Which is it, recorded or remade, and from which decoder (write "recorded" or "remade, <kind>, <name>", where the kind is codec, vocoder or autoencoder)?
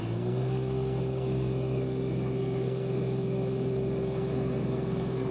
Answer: remade, codec, SNAC